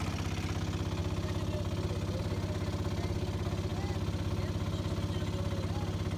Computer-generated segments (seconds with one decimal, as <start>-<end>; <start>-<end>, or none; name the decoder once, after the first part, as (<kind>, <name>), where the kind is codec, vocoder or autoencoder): 3.7-4.4 (vocoder, BigVGAN v2)